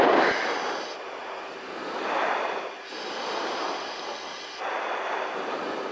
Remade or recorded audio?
recorded